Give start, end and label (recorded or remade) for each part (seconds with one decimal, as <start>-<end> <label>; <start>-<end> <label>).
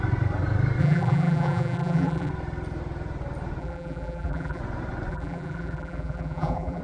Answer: 0.0-0.8 recorded; 0.8-2.3 remade; 2.3-3.6 recorded; 3.6-4.6 remade; 4.6-5.1 recorded; 5.1-6.8 remade